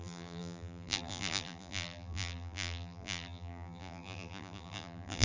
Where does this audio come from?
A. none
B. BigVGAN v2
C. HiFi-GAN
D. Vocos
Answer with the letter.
B